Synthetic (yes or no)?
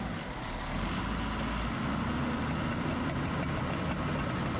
no